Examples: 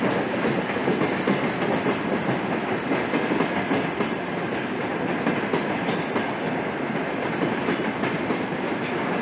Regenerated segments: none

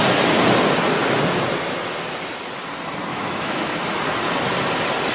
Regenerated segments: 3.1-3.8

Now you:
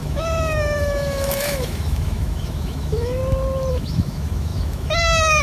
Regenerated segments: 0.0-3.2; 3.7-5.4

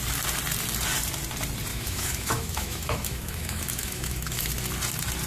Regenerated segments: 1.7-4.5

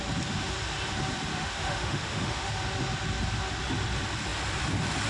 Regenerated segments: 1.3-2.5

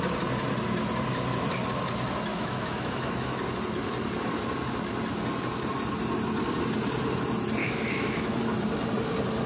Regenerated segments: 2.3-3.4; 7.6-8.4